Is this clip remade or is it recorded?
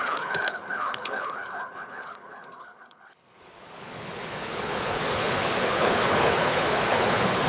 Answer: remade